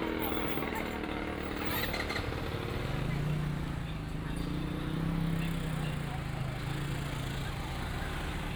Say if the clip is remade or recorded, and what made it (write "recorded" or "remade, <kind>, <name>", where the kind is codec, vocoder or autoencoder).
recorded